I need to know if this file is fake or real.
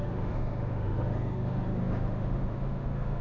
fake